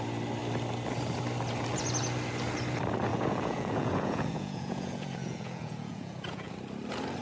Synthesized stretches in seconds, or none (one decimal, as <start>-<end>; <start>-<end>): 3.1-6.5